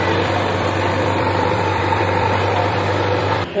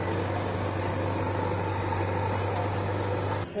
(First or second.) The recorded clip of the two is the second